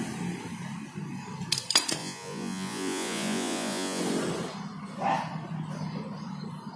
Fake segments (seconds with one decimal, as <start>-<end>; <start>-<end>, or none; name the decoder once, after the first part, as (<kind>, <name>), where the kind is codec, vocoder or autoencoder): 2.0-4.0 (vocoder, Vocos)